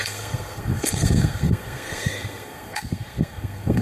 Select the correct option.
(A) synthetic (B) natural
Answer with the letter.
A